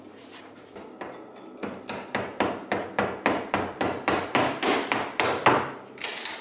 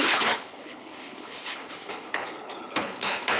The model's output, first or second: second